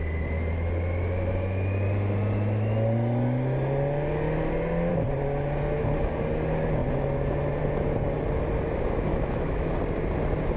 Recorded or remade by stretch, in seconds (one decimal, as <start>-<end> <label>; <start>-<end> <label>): 0.0-9.1 recorded; 9.1-9.7 remade; 9.7-10.6 recorded